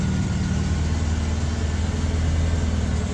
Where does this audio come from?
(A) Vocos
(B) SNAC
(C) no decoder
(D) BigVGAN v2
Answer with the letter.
C